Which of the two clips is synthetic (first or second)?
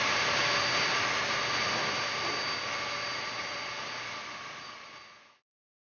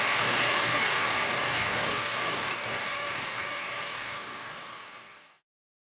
second